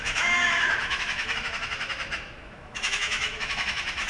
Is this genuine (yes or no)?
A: no